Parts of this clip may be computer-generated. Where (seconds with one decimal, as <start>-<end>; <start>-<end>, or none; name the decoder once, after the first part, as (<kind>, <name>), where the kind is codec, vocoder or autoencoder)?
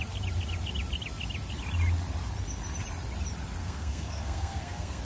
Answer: 3.6-5.0 (codec, SNAC)